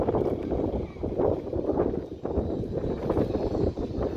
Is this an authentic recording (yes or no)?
yes